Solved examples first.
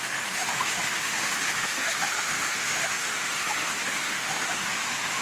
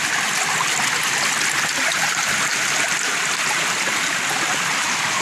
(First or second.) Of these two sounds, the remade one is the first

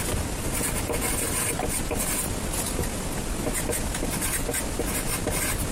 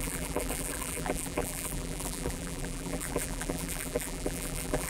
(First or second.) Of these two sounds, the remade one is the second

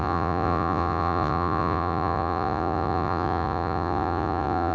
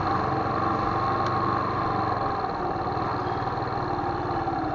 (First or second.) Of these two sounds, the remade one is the first